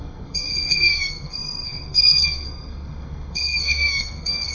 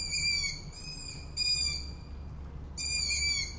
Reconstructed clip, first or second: first